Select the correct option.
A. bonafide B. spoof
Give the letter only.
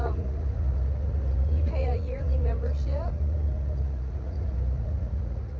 B